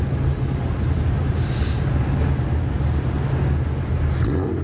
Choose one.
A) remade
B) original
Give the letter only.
B